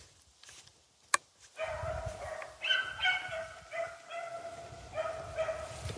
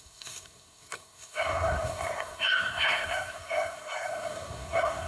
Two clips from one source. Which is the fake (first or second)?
second